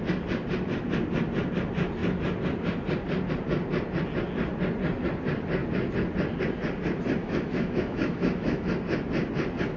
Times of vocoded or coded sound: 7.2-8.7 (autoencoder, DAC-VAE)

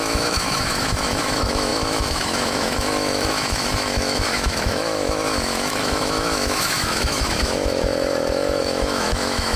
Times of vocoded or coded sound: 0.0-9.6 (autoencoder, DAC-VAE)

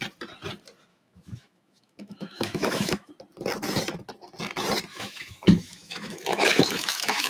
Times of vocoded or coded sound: 0.9-3.1 (autoencoder, DAC-VAE); 4.9-7.3

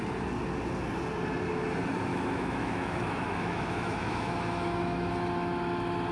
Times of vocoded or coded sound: 2.1-5.1 (autoencoder, DAC-VAE)

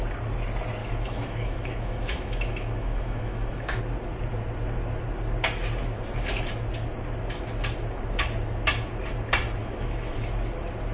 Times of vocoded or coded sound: 0.8-3.8 (autoencoder, DAC-VAE); 9.6-10.3

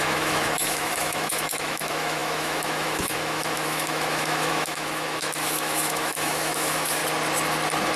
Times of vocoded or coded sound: 0.0-7.0 (autoencoder, DAC-VAE)